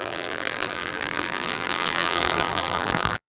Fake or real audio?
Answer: fake